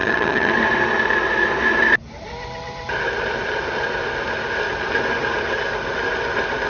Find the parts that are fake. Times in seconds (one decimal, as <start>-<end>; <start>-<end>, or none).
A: 0.0-0.5